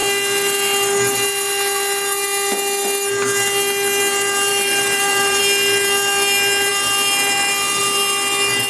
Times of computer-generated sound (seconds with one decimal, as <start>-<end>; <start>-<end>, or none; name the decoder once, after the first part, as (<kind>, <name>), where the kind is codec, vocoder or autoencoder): 4.5-5.4 (vocoder, BigVGAN v2)